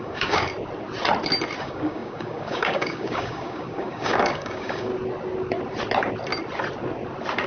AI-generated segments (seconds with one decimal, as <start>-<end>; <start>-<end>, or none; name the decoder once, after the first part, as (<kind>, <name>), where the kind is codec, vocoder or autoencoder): 0.0-0.5 (codec, DAC); 1.6-4.9